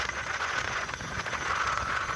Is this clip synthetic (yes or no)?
yes